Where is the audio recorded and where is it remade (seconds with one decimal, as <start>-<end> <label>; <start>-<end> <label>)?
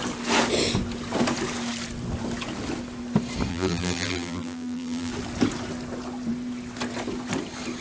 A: 0.0-3.5 recorded; 3.5-5.1 remade; 5.1-7.8 recorded